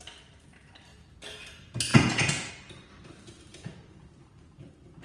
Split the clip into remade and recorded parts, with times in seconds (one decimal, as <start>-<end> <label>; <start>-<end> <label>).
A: 0.0-1.9 recorded; 1.9-2.5 remade; 2.5-3.5 recorded; 3.5-4.1 remade; 4.1-5.0 recorded